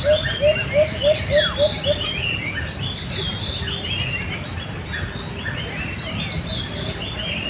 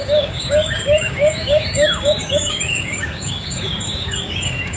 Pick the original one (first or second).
first